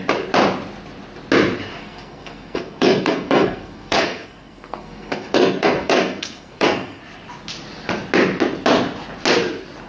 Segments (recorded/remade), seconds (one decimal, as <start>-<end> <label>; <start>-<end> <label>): 0.0-1.8 recorded; 1.8-7.0 remade; 7.0-9.9 recorded